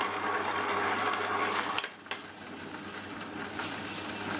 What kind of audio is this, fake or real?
real